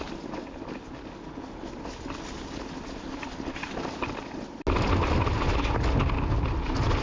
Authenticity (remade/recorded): recorded